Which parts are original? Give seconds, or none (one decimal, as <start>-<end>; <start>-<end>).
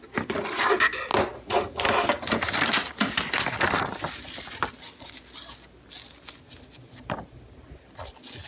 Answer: 0.0-8.5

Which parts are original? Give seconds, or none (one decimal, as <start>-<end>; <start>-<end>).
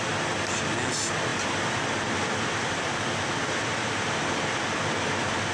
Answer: 0.0-5.5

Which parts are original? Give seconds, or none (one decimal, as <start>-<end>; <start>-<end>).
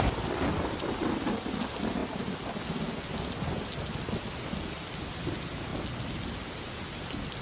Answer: 0.0-7.4